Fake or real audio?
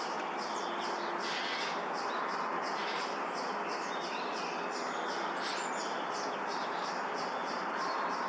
real